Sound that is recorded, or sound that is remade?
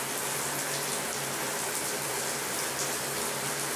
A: recorded